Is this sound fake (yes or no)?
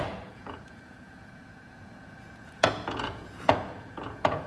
yes